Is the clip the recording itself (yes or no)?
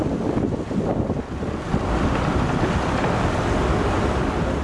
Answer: yes